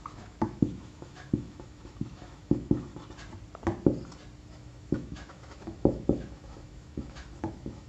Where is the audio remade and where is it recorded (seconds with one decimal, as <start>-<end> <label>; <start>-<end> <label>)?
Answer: 0.0-2.9 remade; 2.9-4.4 recorded; 4.4-7.9 remade